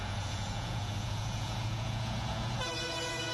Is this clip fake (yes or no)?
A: yes